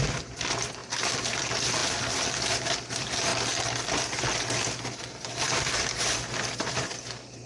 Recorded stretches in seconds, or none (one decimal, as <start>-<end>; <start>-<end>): 3.3-5.1